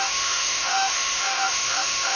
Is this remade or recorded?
remade